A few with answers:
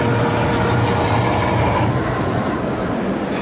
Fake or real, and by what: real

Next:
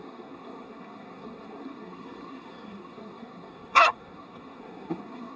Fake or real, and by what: fake, codec, SNAC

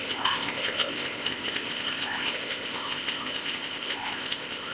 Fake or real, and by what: fake, codec, ZipCodec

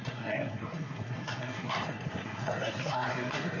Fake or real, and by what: fake, codec, SNAC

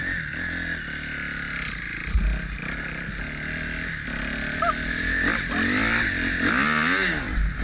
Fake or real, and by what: real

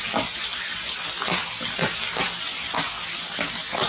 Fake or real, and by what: real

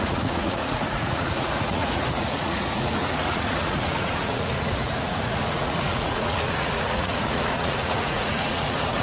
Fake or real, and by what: fake, vocoder, Vocos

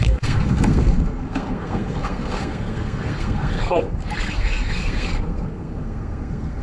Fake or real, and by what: fake, codec, SNAC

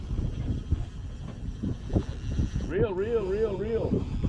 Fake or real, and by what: real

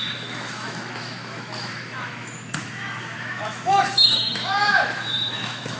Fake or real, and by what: fake, autoencoder, DAC-VAE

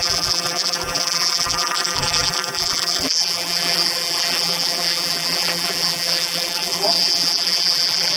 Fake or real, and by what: fake, vocoder, BigVGAN v2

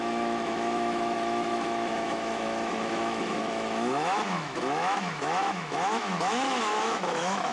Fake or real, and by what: fake, autoencoder, DAC-VAE